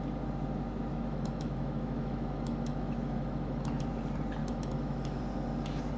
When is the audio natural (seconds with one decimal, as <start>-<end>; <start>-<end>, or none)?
0.0-0.9; 3.8-4.4; 5.2-6.0